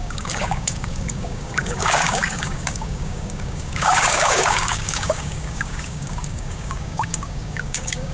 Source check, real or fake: fake